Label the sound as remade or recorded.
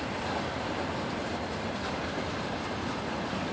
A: remade